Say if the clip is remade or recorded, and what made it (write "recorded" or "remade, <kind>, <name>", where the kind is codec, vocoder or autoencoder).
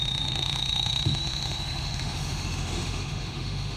remade, autoencoder, DAC-VAE